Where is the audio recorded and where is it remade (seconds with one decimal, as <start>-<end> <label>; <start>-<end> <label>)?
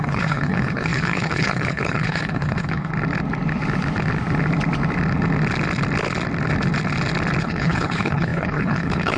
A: 0.0-2.9 remade; 2.9-7.4 recorded; 7.4-9.2 remade